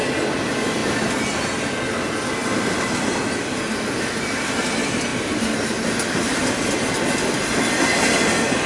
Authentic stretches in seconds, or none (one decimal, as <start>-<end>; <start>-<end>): 0.0-8.7